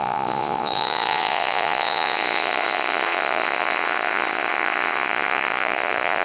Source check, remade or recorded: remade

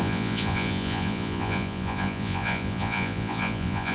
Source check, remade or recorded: remade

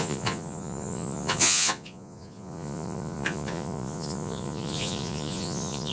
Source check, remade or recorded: remade